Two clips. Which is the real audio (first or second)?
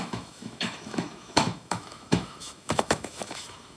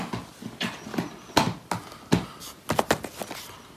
second